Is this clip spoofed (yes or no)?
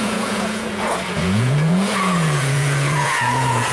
yes